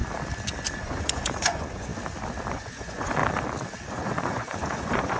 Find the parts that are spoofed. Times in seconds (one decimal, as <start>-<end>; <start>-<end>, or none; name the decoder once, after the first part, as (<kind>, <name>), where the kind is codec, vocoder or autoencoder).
0.8-1.9 (vocoder, Vocos); 2.5-3.2; 3.9-5.2